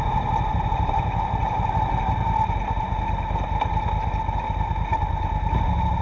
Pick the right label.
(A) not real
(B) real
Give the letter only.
B